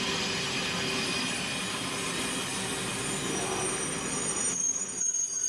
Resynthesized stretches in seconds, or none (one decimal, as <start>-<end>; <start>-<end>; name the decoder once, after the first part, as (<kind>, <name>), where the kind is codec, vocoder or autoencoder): 4.4-5.0 (vocoder, BigVGAN v2)